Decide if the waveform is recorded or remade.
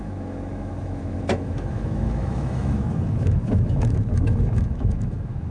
remade